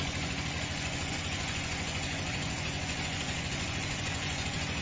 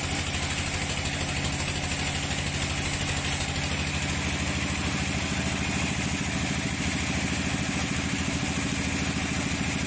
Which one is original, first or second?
second